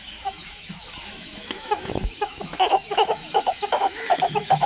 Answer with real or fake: fake